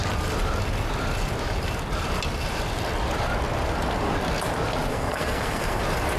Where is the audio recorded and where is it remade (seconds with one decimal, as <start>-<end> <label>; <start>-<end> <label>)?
0.0-4.9 recorded; 4.9-5.8 remade; 5.8-6.2 recorded